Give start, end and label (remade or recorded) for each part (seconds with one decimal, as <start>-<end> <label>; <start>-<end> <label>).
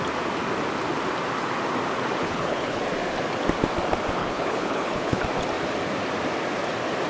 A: 0.0-2.2 recorded; 2.2-2.8 remade; 2.8-4.2 recorded; 4.2-5.2 remade; 5.2-7.1 recorded